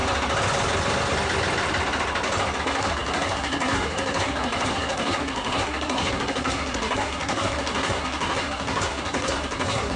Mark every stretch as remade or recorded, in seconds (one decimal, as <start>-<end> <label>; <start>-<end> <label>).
0.0-2.6 recorded; 2.6-10.0 remade